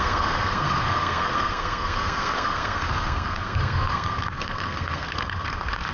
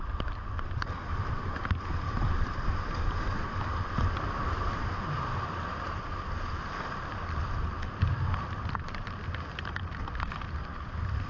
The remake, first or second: first